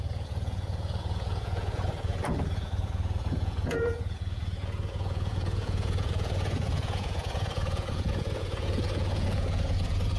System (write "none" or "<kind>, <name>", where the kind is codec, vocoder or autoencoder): vocoder, Vocos